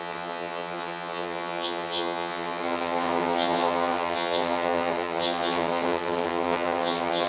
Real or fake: fake